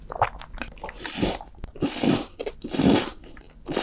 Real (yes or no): yes